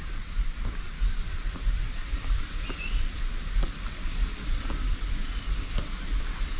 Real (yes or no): yes